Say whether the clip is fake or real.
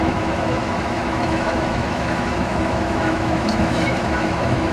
fake